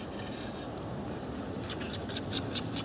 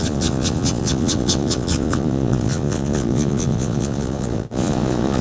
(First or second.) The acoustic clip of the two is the first